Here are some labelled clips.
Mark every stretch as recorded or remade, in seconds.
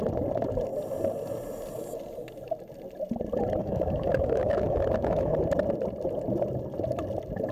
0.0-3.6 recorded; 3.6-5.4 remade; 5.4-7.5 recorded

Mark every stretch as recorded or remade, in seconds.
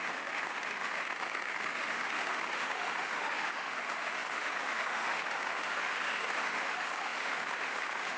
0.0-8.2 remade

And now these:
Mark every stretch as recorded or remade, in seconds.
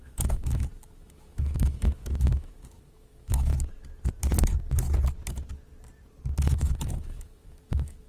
0.0-3.5 remade; 3.5-6.4 recorded; 6.4-8.1 remade